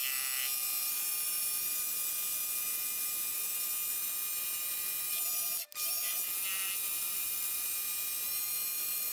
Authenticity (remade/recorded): recorded